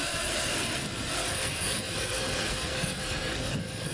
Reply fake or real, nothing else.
fake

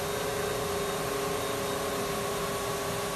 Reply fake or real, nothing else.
real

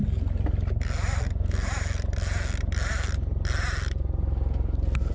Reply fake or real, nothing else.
real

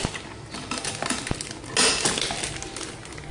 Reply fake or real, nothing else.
real